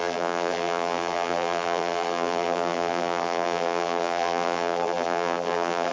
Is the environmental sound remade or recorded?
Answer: remade